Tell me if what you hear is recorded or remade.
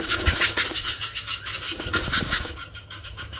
remade